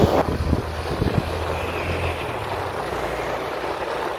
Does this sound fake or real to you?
real